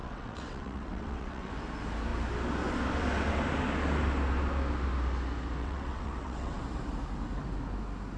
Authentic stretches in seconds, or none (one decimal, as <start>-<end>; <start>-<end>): 1.5-5.6; 6.6-8.2